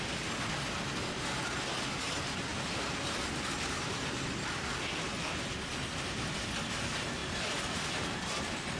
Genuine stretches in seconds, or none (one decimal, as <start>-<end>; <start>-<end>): 0.0-8.8